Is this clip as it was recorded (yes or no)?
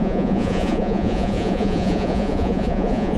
no